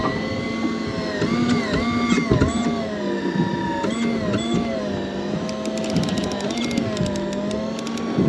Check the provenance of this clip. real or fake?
real